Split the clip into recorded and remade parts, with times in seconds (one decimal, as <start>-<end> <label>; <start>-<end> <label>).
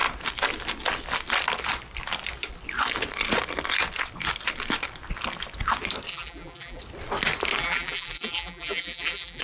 0.0-6.1 recorded; 6.1-6.8 remade; 6.8-7.6 recorded; 7.6-9.4 remade